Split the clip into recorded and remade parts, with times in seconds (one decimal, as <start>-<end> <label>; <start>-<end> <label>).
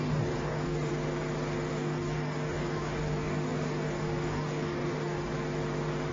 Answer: 0.0-0.9 remade; 0.9-1.7 recorded; 1.7-5.3 remade; 5.3-6.1 recorded